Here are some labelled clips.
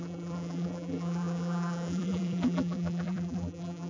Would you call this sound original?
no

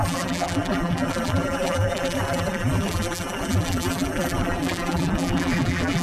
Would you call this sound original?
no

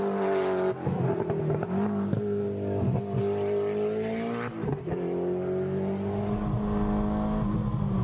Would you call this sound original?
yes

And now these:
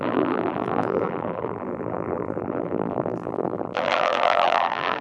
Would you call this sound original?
no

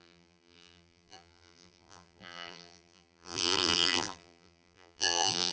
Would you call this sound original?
no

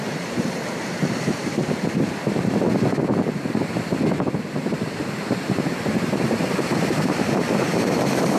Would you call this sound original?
no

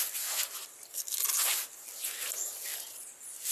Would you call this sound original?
yes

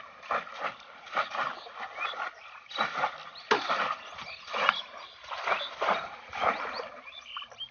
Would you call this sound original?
yes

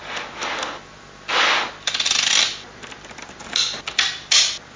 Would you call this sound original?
yes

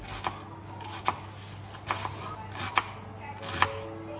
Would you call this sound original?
yes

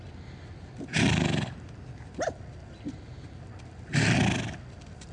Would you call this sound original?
yes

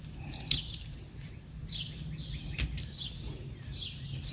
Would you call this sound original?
yes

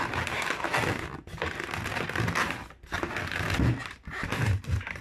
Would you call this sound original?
yes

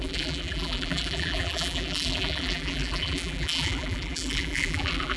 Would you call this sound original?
no